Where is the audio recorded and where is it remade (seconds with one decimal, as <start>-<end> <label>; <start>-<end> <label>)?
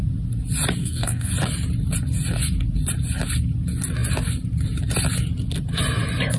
0.0-0.8 recorded; 0.8-1.3 remade; 1.3-6.4 recorded